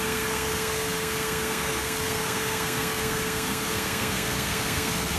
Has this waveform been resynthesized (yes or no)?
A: yes